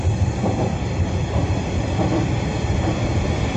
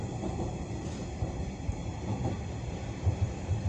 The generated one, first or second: second